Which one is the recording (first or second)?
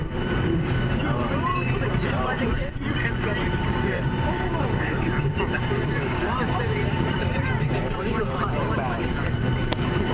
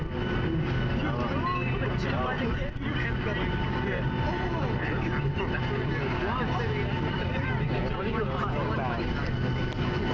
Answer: second